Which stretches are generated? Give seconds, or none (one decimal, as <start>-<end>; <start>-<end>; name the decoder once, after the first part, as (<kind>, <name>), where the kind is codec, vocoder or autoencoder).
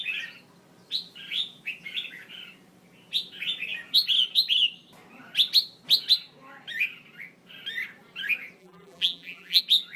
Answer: 8.6-9.6 (vocoder, BigVGAN v2)